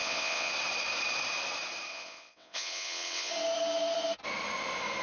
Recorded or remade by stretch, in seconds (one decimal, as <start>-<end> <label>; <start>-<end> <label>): 0.0-0.5 remade; 0.5-1.9 recorded; 1.9-3.3 remade; 3.3-5.0 recorded